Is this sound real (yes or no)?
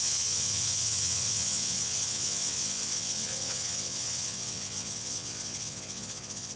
no